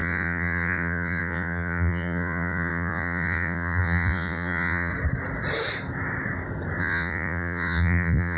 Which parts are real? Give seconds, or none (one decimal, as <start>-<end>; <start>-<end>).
4.9-6.8